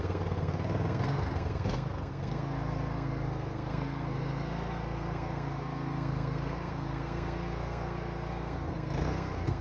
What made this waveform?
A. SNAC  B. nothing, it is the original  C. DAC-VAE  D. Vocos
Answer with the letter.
A